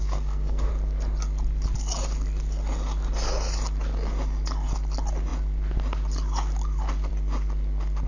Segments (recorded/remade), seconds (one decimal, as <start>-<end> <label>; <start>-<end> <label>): 0.0-0.7 remade; 0.7-8.1 recorded